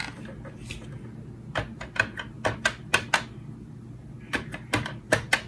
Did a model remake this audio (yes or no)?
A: no